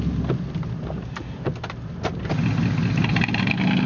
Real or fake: real